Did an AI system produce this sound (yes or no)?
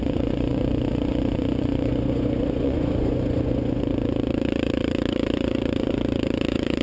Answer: yes